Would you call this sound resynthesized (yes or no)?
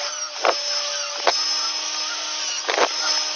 no